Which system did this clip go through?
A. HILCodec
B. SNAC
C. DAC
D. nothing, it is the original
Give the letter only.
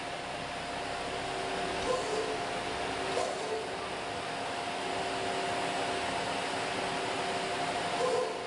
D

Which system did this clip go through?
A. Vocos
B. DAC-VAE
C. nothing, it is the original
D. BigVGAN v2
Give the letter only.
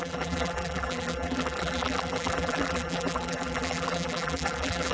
D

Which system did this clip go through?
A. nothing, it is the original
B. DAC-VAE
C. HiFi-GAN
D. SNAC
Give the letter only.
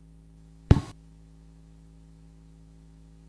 B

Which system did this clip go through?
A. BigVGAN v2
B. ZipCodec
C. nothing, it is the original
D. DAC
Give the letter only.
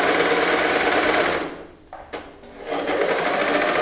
C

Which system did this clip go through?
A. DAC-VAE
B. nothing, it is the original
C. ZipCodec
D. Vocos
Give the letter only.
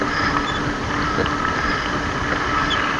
B